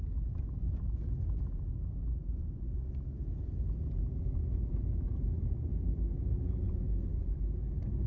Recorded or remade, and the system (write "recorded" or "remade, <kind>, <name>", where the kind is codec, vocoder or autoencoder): recorded